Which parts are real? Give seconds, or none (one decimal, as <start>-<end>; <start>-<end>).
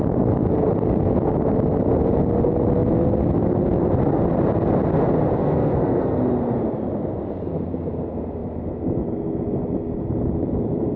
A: 0.0-5.4; 6.2-11.0